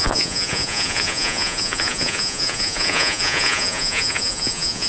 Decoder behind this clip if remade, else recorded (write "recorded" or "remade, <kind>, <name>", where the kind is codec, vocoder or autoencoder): remade, vocoder, Vocos